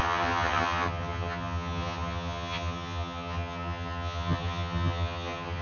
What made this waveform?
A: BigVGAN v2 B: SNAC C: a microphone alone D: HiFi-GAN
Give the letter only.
D